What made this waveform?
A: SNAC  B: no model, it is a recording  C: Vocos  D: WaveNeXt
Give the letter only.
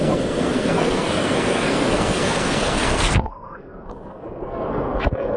A